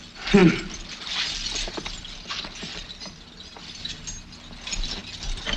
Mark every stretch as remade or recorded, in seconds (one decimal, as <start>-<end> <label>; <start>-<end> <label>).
0.0-5.6 recorded